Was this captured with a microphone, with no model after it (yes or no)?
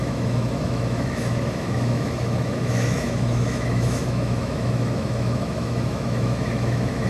no